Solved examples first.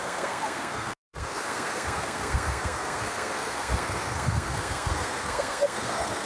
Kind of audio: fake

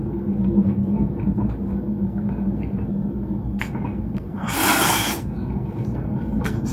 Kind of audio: fake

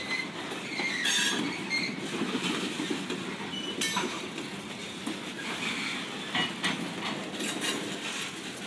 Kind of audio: real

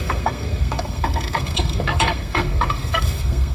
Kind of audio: fake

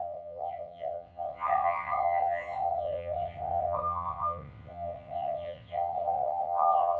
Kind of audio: fake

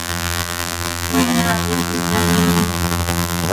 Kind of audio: fake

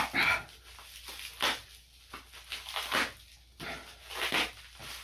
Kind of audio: real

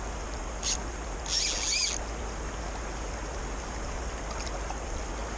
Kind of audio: real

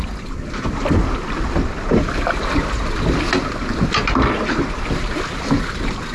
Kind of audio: real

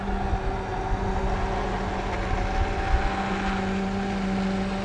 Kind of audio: real